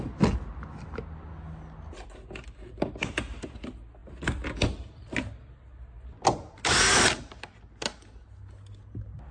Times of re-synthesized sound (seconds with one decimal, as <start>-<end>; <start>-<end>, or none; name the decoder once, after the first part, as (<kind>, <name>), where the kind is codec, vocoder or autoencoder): none